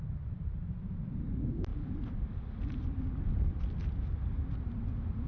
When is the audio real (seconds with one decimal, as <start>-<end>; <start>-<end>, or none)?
0.0-5.3